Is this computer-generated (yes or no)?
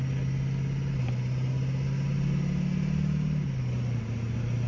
no